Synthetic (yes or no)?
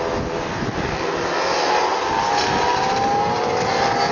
no